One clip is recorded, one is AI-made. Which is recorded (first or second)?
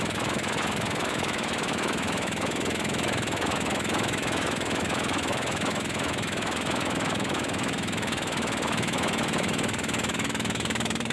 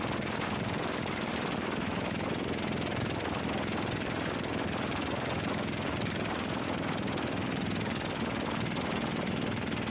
second